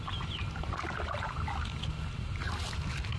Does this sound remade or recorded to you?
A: recorded